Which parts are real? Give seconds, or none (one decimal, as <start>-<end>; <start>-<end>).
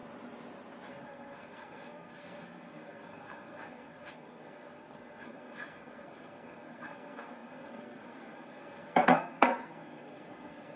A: 0.0-0.9